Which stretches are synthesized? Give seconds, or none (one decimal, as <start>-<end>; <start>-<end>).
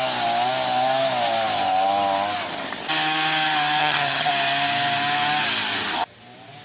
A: 3.8-4.3